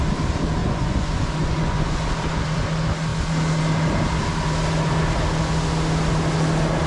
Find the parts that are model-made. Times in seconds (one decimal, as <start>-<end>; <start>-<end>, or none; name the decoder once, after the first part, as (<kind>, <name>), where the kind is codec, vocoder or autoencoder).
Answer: 0.6-2.0 (vocoder, Vocos)